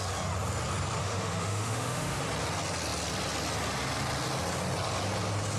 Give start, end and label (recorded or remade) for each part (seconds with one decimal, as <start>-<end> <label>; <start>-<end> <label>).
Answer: 0.0-1.0 recorded; 1.0-2.2 remade; 2.2-5.6 recorded